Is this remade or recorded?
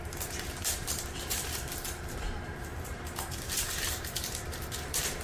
remade